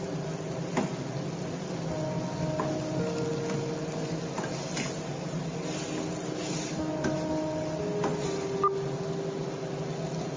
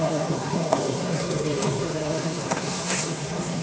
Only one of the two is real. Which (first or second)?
first